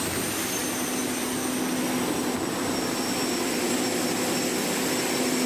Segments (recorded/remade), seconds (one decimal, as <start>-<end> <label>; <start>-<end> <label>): 0.0-5.5 recorded